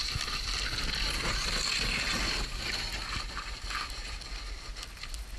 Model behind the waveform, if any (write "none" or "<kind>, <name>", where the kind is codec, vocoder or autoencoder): none